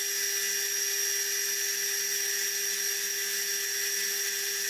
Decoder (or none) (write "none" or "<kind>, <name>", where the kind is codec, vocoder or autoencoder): none